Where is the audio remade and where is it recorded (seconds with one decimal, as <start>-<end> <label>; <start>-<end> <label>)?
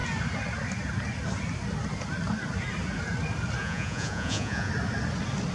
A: 0.0-3.6 recorded; 3.6-4.7 remade; 4.7-5.5 recorded